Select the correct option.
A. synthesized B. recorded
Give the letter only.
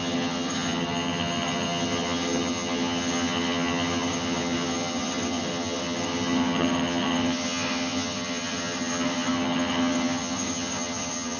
A